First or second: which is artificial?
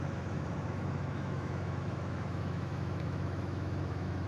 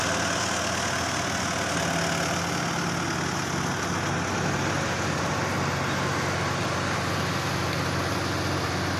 first